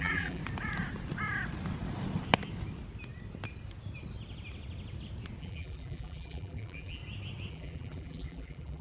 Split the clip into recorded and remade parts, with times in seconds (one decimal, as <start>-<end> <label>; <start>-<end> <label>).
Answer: 0.0-0.4 remade; 0.4-5.4 recorded; 5.4-7.0 remade; 7.0-7.5 recorded; 7.5-8.8 remade